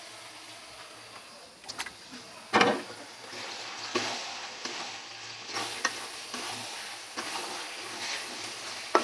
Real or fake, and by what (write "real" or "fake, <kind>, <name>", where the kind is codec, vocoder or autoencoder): real